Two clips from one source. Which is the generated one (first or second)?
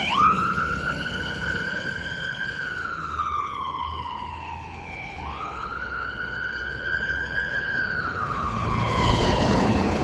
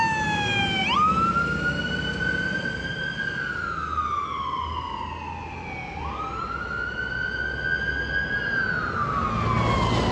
first